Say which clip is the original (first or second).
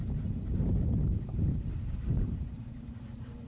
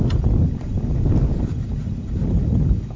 second